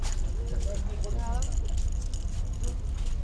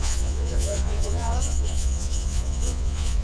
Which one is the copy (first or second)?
second